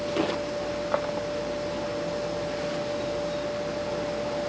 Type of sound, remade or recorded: recorded